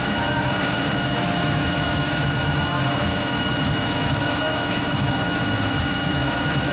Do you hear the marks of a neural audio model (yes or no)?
yes